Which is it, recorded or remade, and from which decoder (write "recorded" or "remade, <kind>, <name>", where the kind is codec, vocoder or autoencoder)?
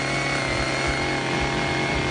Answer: recorded